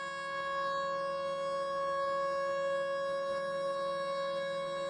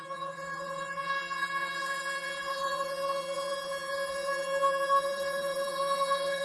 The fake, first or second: second